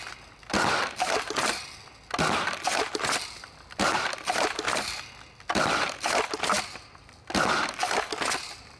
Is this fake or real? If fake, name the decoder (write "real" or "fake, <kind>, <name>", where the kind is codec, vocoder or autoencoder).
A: real